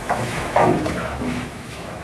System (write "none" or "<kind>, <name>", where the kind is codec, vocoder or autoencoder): autoencoder, DAC-VAE